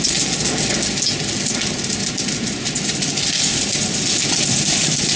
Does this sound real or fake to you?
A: real